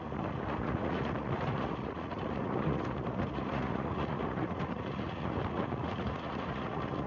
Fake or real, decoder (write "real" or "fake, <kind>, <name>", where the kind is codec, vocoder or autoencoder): fake, vocoder, Vocos